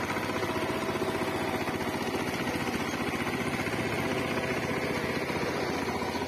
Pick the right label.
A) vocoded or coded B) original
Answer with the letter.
B